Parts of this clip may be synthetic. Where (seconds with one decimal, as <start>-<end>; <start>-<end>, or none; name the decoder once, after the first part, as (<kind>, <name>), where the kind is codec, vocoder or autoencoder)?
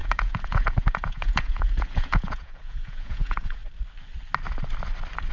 0.0-3.6 (vocoder, Vocos)